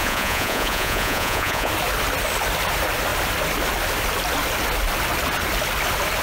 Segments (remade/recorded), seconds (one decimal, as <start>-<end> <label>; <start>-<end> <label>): 0.0-1.7 remade; 1.7-6.2 recorded

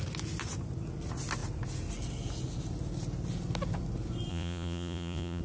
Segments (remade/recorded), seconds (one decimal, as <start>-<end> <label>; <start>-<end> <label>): 0.0-4.3 recorded; 4.3-5.4 remade

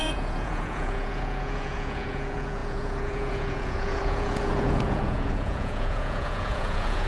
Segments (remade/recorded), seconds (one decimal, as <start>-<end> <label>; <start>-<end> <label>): 0.0-7.1 remade